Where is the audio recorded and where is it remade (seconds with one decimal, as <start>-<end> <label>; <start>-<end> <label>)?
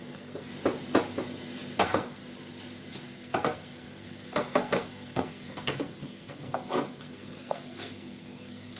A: 0.0-0.5 remade; 0.5-1.8 recorded; 1.8-2.2 remade; 2.2-2.9 recorded; 2.9-8.8 remade